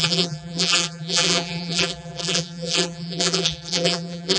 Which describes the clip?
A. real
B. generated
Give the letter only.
B